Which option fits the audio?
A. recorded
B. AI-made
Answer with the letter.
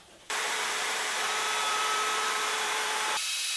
B